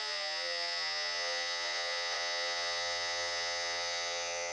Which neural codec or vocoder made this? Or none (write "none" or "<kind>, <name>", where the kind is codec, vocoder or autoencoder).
vocoder, Vocos